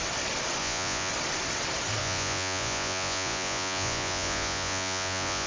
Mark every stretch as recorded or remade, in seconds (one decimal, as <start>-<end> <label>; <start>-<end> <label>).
0.0-0.6 recorded; 0.6-1.1 remade; 1.1-2.0 recorded; 2.0-5.5 remade